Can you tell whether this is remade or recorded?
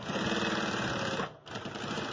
recorded